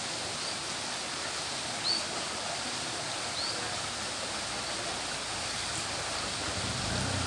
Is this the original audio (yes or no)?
yes